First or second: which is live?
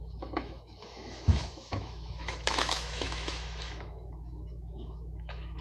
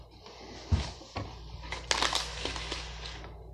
second